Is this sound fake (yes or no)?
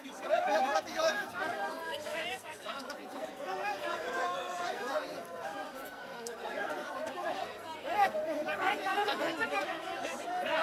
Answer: yes